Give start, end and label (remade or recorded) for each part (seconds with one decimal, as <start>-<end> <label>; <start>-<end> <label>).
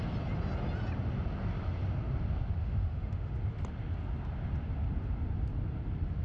0.0-2.6 recorded; 2.6-3.3 remade; 3.3-6.2 recorded